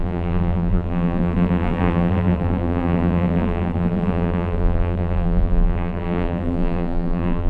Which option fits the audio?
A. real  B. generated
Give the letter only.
B